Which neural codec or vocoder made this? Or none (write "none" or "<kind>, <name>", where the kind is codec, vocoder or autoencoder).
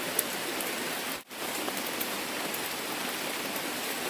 none